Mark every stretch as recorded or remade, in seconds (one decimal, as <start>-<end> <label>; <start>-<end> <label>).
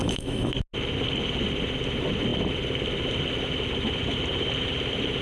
0.0-0.5 remade; 0.5-5.2 recorded